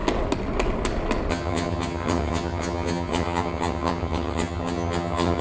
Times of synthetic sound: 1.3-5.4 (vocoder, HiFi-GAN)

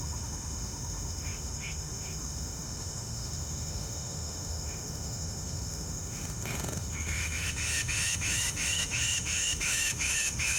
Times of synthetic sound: 0.0-10.6 (autoencoder, DAC-VAE)

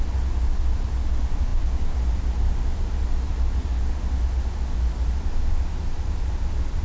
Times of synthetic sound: none

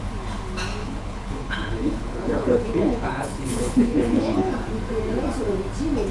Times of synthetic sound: 0.8-4.5 (codec, HILCodec)